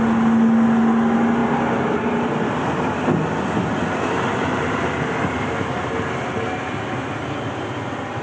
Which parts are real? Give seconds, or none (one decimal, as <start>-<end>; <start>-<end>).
0.0-8.2